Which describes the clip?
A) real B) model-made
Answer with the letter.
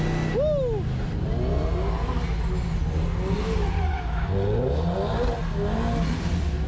A